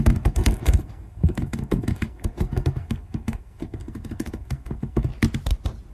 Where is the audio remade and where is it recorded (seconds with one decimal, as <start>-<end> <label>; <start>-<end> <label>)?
0.0-5.1 remade; 5.1-5.9 recorded